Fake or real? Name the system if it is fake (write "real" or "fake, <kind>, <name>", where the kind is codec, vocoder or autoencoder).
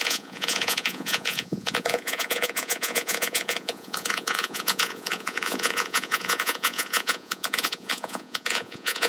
fake, vocoder, Vocos